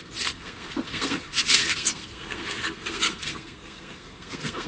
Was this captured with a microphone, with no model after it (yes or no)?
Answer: no